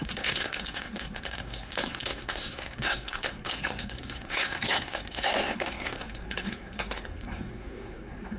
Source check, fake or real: fake